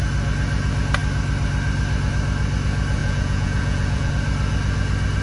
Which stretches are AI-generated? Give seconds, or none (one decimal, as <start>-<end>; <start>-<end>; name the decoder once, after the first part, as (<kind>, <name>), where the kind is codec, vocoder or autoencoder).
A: 3.0-4.1 (vocoder, Vocos)